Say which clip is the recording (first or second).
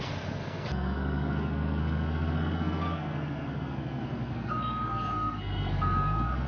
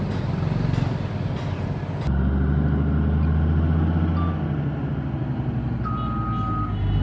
second